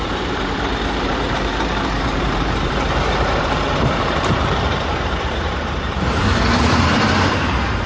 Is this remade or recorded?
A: remade